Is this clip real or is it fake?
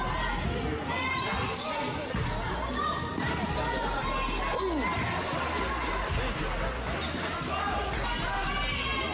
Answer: real